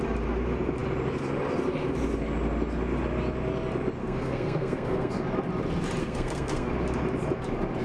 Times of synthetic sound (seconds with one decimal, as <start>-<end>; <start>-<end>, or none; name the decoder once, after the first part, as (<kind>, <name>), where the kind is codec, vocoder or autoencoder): 4.0-5.1 (codec, SNAC); 6.0-6.7